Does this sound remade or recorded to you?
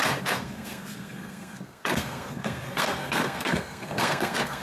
remade